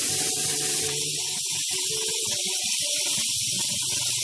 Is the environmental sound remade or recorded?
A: remade